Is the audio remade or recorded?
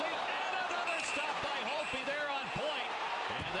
remade